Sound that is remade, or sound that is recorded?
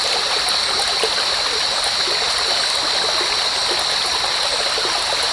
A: recorded